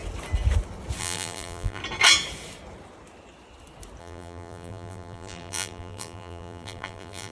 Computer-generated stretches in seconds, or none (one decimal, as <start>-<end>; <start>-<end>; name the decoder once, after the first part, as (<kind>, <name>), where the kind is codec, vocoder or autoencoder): 1.0-1.8 (vocoder, BigVGAN v2); 4.0-7.3